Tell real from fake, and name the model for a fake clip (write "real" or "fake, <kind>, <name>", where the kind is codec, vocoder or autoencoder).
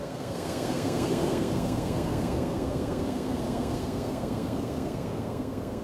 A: fake, codec, SNAC